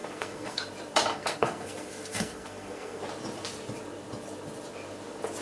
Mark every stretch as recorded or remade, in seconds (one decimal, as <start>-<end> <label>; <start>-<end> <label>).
0.0-0.6 remade; 0.6-1.1 recorded; 1.1-3.0 remade; 3.0-5.4 recorded